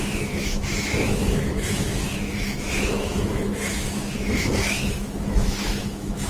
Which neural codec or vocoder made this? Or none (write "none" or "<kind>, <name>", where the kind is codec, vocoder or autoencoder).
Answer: autoencoder, DAC-VAE